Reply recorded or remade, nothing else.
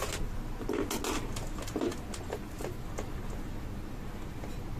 recorded